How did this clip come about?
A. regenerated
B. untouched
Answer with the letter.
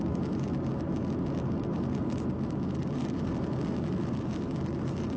B